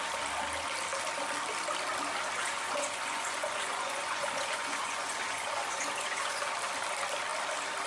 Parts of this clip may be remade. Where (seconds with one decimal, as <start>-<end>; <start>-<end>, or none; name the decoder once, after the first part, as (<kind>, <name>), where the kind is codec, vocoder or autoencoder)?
2.4-6.4 (vocoder, Vocos)

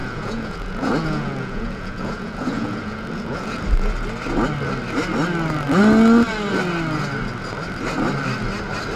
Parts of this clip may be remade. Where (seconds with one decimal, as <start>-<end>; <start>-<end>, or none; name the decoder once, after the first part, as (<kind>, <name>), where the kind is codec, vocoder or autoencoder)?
0.0-3.6 (vocoder, Vocos)

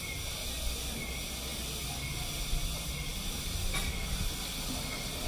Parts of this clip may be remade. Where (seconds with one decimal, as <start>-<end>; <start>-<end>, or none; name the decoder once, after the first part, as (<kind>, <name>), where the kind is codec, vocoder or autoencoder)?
none

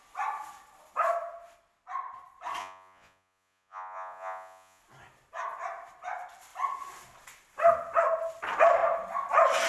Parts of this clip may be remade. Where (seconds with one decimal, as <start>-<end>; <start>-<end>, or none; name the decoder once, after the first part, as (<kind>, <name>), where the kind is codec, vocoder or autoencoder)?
2.6-4.8 (vocoder, Vocos)

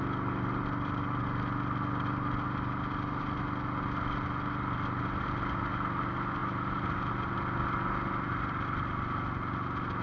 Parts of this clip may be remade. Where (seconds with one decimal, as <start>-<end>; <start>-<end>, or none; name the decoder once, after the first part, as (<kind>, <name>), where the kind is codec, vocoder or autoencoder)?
none